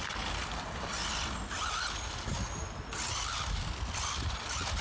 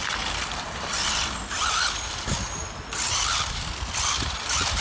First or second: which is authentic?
first